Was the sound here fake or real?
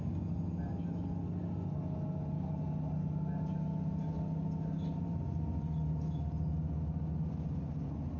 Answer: real